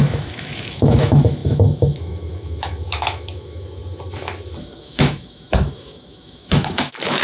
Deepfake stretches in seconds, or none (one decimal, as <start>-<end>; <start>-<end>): 0.0-3.8; 4.6-7.2